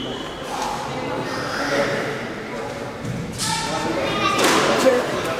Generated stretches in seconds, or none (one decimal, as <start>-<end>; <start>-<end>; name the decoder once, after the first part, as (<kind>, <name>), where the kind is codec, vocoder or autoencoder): none